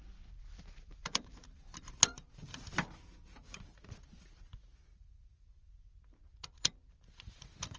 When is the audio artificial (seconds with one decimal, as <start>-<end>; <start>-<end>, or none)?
1.0-1.9